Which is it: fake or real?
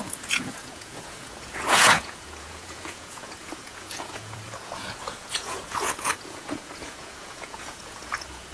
fake